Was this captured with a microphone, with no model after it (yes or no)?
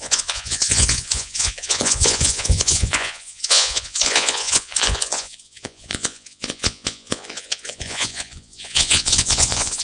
no